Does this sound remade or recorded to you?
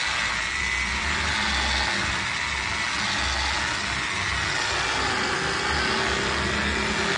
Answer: recorded